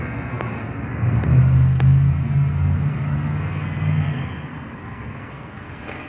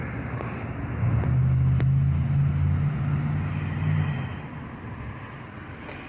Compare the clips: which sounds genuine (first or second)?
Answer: second